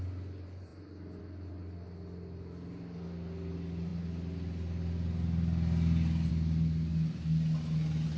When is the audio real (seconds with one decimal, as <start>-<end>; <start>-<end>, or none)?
0.0-8.2

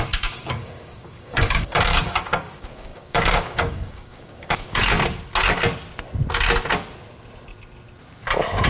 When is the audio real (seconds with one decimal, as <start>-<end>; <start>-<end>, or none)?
4.8-8.7

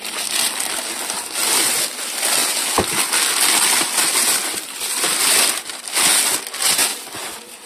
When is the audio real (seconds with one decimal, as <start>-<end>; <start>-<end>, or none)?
0.0-7.7

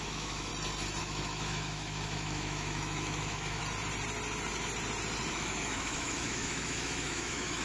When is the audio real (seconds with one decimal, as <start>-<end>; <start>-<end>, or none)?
0.5-1.0; 3.6-5.3

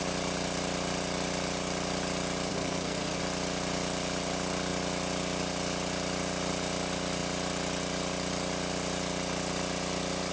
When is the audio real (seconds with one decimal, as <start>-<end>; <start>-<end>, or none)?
0.0-2.5; 3.2-10.3

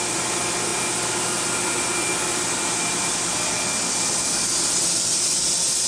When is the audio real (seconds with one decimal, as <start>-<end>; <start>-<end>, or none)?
0.0-5.9

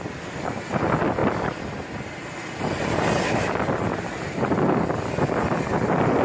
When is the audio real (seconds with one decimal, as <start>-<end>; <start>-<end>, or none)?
0.0-6.2